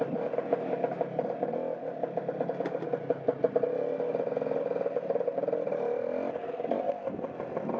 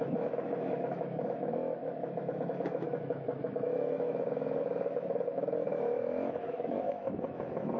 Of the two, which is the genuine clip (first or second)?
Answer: first